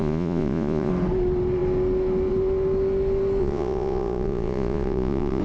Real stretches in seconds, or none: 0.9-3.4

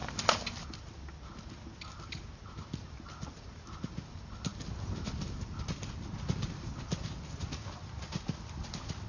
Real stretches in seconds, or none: 0.0-9.1

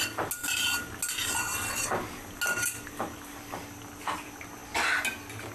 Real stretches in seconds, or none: 0.0-0.4; 1.0-5.5

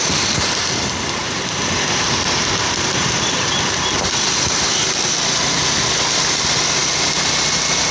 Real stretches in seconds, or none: 0.0-1.2; 5.1-7.9

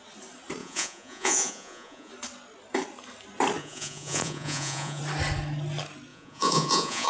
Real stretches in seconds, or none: 0.0-0.6; 2.1-3.6; 5.0-6.1